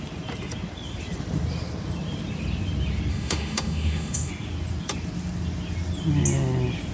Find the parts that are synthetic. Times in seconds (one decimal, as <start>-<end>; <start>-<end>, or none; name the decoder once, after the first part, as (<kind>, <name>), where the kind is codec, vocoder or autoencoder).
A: 3.1-4.3 (autoencoder, DAC-VAE)